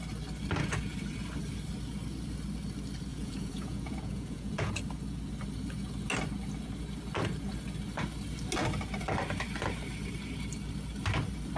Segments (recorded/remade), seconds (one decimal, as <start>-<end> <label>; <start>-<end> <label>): 0.0-3.1 recorded; 3.1-4.7 remade; 4.7-11.6 recorded